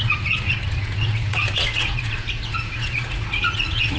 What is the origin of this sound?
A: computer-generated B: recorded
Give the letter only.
A